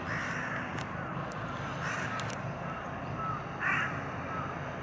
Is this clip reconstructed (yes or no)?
no